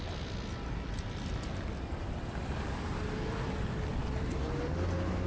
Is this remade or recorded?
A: recorded